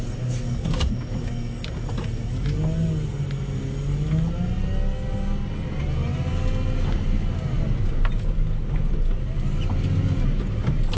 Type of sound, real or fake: real